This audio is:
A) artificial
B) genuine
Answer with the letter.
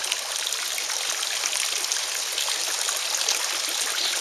B